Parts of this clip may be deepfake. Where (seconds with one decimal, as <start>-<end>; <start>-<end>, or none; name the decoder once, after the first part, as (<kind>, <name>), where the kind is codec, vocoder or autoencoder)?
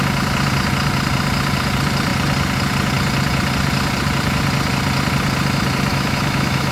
5.9-6.7 (autoencoder, DAC-VAE)